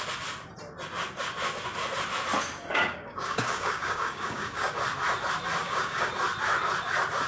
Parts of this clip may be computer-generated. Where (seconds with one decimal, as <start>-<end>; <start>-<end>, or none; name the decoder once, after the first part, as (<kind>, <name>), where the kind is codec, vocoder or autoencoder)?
2.7-4.7 (codec, DAC); 5.6-6.1